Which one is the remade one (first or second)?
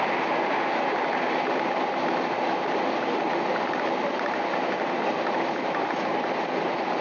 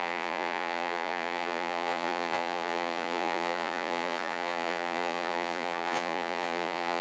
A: second